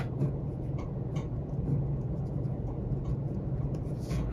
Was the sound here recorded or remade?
remade